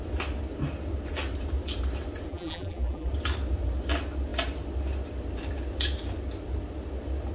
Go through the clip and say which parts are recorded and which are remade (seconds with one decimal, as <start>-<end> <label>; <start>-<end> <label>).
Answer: 0.0-2.3 recorded; 2.3-3.1 remade; 3.1-7.3 recorded